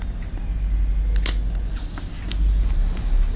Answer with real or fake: real